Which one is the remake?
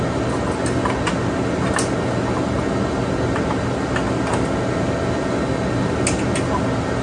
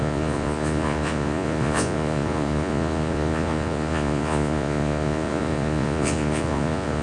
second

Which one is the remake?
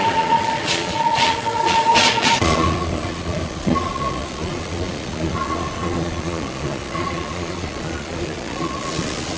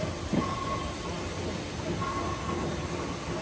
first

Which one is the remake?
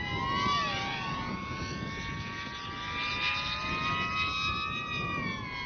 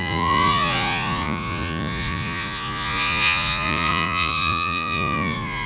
second